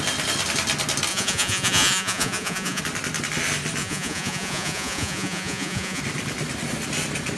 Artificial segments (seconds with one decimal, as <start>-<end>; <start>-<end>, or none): 1.1-2.8; 3.8-6.0